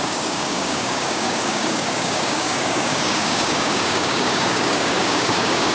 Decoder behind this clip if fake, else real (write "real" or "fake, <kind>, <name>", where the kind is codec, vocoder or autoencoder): fake, codec, DAC